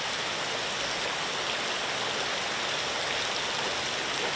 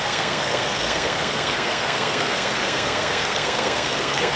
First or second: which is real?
first